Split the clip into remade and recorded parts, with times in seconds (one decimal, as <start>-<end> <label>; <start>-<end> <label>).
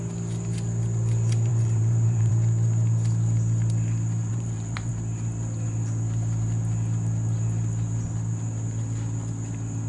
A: 0.0-1.5 recorded; 1.5-2.3 remade; 2.3-4.3 recorded; 4.3-4.9 remade; 4.9-9.9 recorded